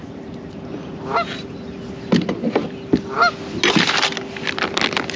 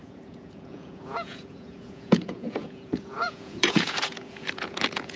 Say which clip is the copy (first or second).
second